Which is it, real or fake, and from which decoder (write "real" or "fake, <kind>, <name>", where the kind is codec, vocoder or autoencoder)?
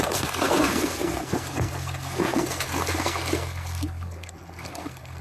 fake, codec, SNAC